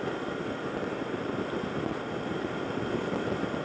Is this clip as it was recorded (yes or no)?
yes